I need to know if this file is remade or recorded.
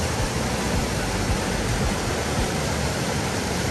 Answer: recorded